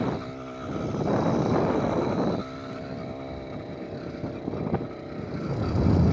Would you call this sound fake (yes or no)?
no